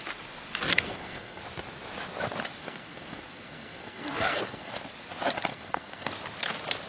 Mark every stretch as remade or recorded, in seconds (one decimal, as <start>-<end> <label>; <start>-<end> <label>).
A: 0.0-0.7 recorded; 0.7-1.4 remade; 1.4-2.6 recorded; 2.6-4.7 remade; 4.7-5.5 recorded; 5.5-6.1 remade; 6.1-6.9 recorded